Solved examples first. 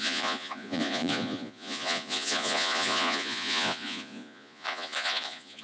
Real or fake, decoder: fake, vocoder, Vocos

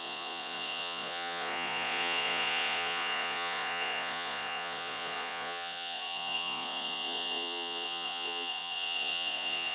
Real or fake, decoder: fake, vocoder, Vocos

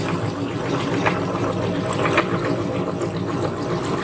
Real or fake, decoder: real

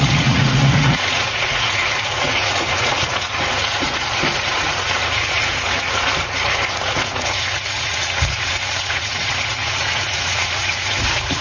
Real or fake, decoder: fake, vocoder, Vocos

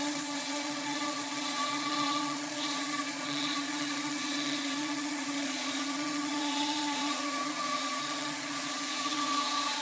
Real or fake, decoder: fake, vocoder, Vocos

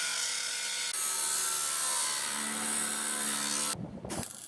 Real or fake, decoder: real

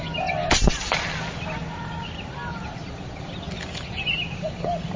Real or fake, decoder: real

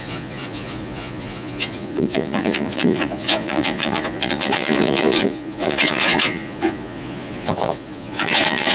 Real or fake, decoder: fake, vocoder, Vocos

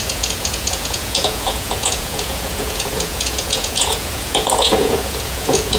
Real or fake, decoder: fake, vocoder, Vocos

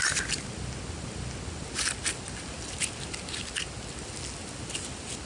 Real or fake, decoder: real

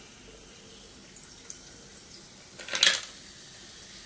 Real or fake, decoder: real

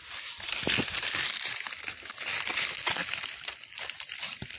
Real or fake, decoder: real